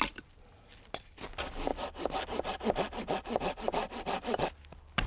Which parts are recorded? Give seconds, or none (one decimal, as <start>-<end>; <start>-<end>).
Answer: 0.0-5.1